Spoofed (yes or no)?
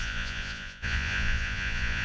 yes